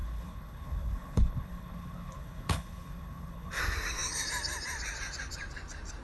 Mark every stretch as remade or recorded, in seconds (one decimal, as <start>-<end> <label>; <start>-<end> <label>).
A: 0.0-3.6 remade; 3.6-6.0 recorded